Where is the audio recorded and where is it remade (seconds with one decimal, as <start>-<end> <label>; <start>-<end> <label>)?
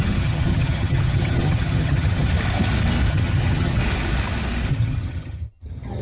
0.0-2.3 remade; 2.3-3.1 recorded; 3.1-3.8 remade; 3.8-4.7 recorded; 4.7-6.0 remade